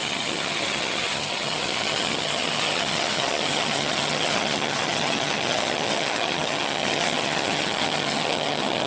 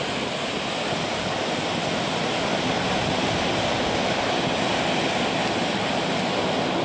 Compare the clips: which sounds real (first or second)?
second